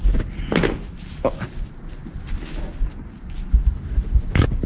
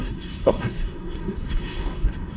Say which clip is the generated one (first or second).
second